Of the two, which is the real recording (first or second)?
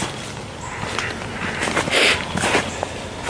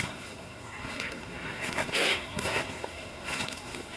first